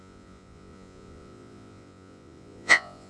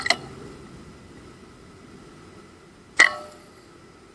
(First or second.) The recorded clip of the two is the second